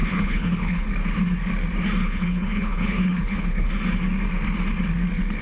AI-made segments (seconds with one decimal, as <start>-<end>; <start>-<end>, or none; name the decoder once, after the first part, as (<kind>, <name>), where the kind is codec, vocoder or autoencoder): 0.0-0.9 (codec, HILCodec); 2.0-3.7